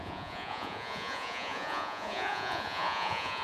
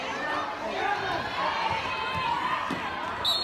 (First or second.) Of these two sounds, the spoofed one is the first